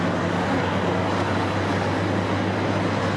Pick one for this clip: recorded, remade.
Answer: recorded